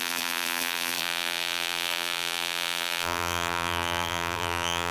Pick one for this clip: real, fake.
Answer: fake